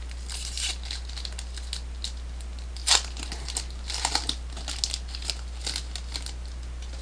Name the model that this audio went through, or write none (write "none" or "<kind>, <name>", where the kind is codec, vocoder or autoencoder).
none